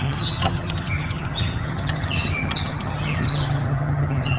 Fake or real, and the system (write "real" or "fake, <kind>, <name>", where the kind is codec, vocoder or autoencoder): fake, vocoder, HiFi-GAN